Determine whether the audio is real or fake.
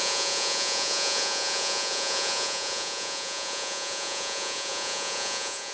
fake